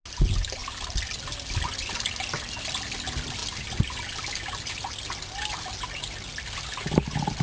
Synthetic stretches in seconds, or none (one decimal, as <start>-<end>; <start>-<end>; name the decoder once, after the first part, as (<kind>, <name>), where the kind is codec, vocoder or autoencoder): none